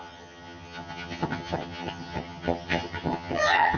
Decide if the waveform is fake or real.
fake